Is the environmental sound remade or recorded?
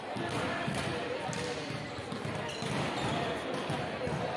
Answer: recorded